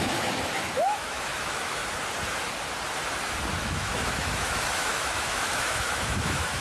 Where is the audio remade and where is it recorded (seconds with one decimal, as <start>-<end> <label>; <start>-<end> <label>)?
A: 0.0-1.8 remade; 1.8-3.6 recorded; 3.6-6.6 remade